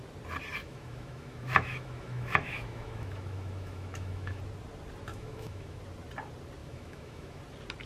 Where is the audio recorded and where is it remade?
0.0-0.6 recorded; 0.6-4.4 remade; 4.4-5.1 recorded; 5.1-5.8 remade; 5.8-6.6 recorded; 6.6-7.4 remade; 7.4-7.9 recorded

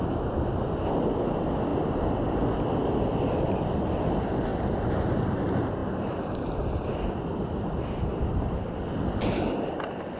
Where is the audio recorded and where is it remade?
0.0-10.2 recorded

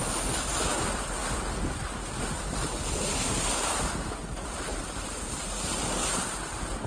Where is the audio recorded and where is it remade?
0.0-4.7 recorded; 4.7-5.8 remade; 5.8-6.9 recorded

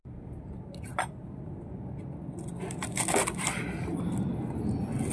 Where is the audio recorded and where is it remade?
0.0-5.1 recorded

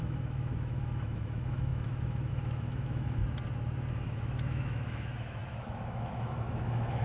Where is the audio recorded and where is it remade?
0.0-3.2 remade; 3.2-3.9 recorded; 3.9-7.0 remade